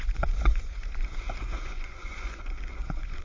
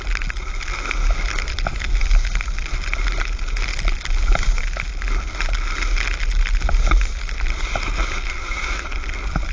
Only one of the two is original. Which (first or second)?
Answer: second